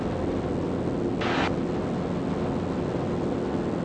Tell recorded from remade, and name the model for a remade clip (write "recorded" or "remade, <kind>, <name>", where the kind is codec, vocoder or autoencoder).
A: recorded